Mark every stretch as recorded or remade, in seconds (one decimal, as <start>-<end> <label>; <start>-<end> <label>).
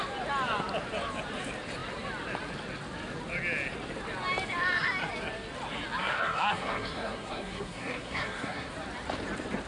0.0-6.0 recorded; 6.0-8.7 remade; 8.7-9.7 recorded